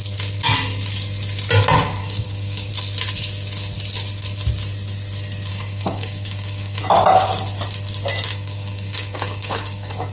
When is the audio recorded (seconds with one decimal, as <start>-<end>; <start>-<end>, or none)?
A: 0.0-2.0; 2.7-5.5; 6.8-8.3